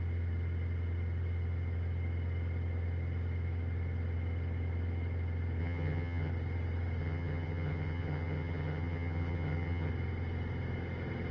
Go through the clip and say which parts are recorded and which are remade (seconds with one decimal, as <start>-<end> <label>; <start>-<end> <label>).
0.0-5.6 recorded; 5.6-6.3 remade; 6.3-7.0 recorded; 7.0-9.9 remade; 9.9-11.3 recorded